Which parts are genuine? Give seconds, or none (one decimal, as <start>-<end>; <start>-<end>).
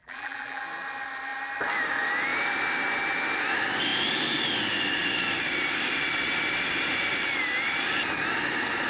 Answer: 0.6-8.9